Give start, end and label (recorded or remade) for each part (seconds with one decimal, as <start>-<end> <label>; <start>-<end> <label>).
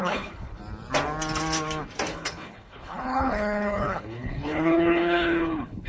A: 0.0-0.6 remade; 0.6-2.1 recorded; 2.1-5.9 remade